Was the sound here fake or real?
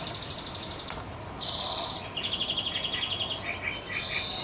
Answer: real